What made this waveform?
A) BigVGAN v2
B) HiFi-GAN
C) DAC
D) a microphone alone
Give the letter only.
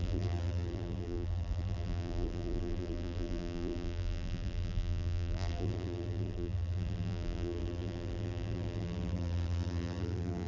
A